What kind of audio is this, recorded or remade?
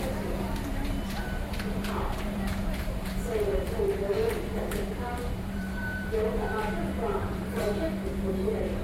remade